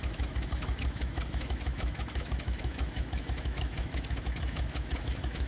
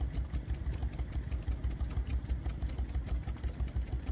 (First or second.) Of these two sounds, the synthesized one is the first